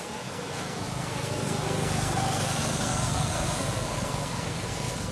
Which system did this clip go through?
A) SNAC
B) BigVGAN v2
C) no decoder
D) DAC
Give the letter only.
A